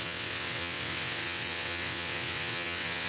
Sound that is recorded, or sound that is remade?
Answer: remade